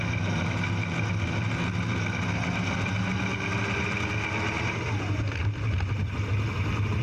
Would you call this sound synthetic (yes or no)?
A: no